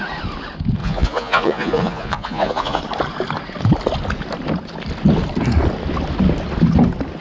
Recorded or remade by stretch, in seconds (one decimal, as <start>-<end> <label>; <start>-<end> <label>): 0.0-0.8 recorded; 0.8-2.8 remade; 2.8-7.2 recorded